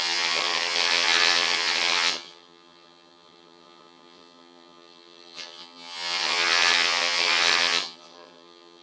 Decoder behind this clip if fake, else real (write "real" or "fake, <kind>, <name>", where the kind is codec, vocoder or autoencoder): fake, vocoder, HiFi-GAN